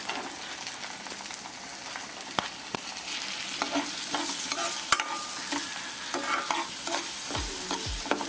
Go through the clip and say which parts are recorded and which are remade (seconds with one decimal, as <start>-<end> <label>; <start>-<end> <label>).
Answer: 0.0-8.3 recorded